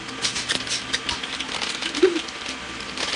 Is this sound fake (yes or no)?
no